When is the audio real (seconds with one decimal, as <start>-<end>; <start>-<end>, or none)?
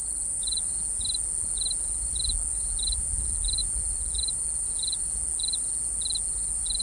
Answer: 0.0-6.8